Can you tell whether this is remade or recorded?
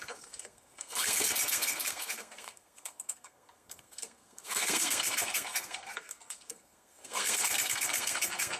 remade